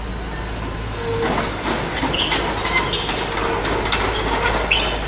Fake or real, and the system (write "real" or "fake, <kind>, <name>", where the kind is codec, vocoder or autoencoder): real